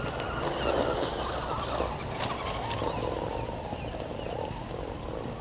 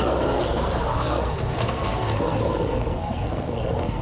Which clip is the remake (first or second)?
second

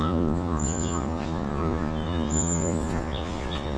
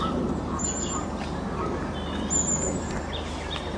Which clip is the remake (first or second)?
first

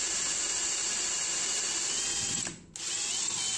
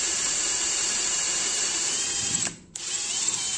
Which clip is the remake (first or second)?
second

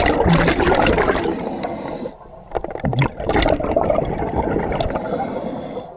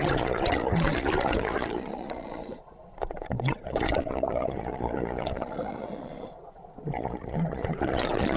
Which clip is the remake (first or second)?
second